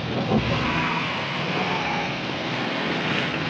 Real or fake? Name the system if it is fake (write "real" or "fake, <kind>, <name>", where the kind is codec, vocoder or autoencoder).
fake, codec, SNAC